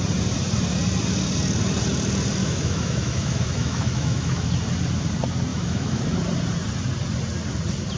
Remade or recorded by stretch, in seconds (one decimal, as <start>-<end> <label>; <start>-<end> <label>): 0.0-2.4 recorded; 2.4-4.5 remade; 4.5-5.5 recorded; 5.5-6.0 remade; 6.0-8.0 recorded